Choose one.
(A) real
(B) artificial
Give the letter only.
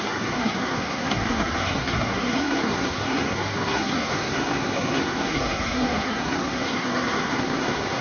B